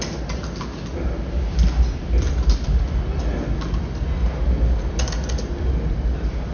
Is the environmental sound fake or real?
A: real